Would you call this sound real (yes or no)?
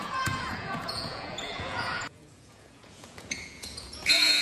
no